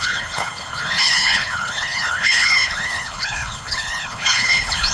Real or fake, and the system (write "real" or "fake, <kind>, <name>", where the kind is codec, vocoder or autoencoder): fake, codec, HILCodec